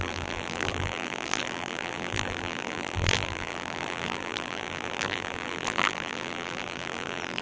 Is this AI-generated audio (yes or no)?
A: yes